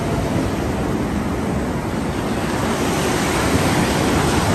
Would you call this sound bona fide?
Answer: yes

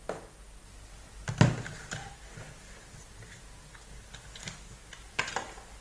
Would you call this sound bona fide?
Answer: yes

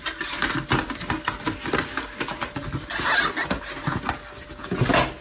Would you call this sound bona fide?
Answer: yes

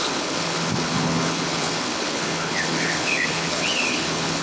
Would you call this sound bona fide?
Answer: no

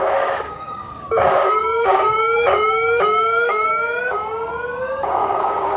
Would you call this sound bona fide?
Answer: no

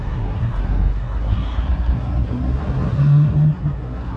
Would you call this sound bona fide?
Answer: no